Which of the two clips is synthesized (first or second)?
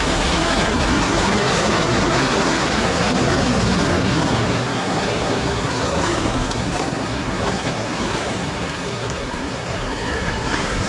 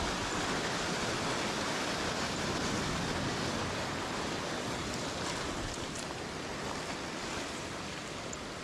first